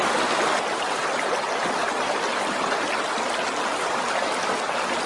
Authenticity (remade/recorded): recorded